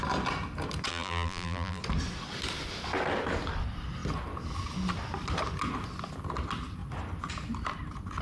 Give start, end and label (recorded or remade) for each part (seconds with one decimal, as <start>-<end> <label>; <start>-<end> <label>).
0.0-0.9 recorded; 0.9-1.8 remade; 1.8-8.2 recorded